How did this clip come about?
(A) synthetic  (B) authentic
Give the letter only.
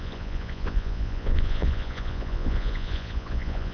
A